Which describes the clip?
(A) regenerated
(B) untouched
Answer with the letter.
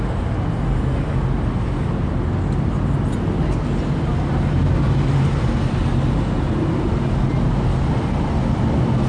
B